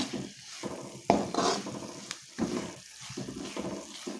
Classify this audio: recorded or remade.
recorded